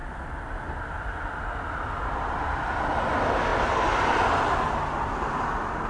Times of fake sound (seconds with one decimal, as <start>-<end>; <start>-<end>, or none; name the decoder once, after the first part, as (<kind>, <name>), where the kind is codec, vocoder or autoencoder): none